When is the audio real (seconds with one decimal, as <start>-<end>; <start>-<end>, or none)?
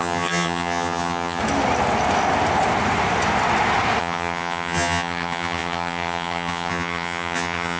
1.4-4.0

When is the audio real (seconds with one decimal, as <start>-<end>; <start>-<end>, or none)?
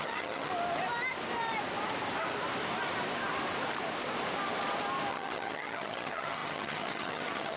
0.5-5.1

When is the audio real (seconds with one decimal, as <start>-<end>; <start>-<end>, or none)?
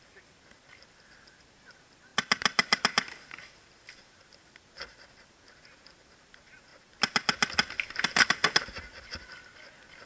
0.0-10.1